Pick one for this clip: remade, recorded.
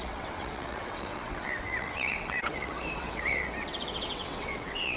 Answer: remade